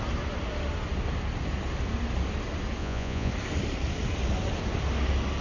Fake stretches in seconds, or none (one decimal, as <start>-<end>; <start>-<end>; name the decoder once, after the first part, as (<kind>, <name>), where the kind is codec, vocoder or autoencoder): 2.8-3.3 (vocoder, Vocos)